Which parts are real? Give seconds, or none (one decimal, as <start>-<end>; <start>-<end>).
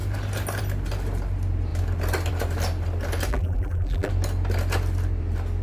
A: 0.0-3.3; 4.1-5.6